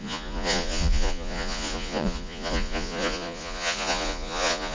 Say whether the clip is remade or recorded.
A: remade